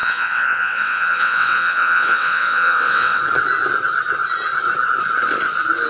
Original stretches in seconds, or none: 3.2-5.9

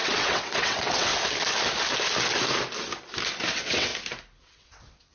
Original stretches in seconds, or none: 1.1-3.5; 3.9-4.4

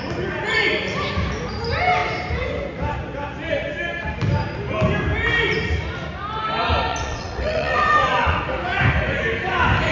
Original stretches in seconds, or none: 0.0-6.9; 8.4-9.9